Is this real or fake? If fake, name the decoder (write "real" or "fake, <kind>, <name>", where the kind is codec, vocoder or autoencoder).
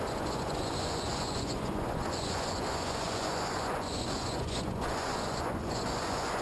fake, vocoder, Vocos